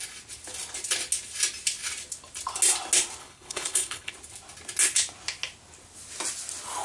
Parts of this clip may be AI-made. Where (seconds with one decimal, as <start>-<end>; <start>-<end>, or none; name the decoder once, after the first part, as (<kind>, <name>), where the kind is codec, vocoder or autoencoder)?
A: 3.2-4.1 (codec, HILCodec)